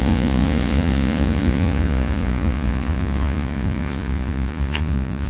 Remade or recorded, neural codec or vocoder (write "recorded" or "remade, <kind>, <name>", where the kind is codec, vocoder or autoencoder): remade, vocoder, Vocos